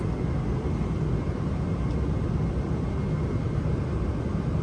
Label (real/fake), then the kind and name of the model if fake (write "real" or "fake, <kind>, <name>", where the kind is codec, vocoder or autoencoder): real